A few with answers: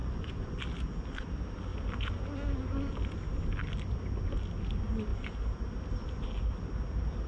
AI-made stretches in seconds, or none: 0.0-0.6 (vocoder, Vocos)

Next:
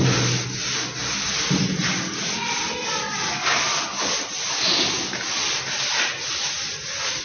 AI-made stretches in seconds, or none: none